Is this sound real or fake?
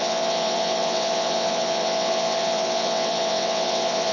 fake